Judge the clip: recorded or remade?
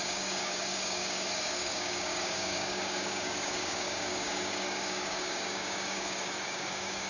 remade